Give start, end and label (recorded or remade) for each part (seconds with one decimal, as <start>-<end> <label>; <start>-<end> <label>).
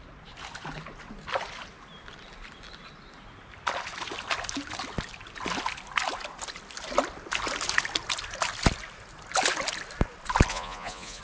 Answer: 0.0-10.5 recorded; 10.5-11.2 remade